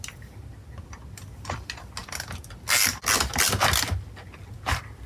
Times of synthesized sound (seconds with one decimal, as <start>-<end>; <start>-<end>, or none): none